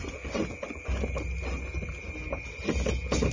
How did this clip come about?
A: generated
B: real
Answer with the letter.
B